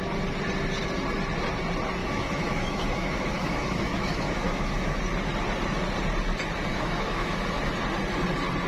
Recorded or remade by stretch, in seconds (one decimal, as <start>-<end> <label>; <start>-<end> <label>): 0.0-2.0 recorded; 2.0-5.0 remade; 5.0-6.7 recorded; 6.7-7.6 remade; 7.6-8.7 recorded